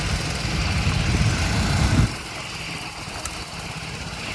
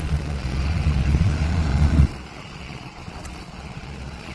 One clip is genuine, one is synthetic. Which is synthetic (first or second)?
second